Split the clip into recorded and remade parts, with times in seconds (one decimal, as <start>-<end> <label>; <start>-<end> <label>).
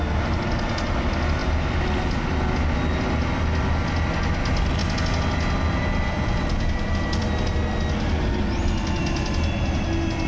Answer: 0.0-10.3 recorded